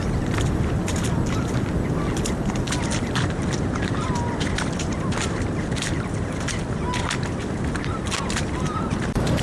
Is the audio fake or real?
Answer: real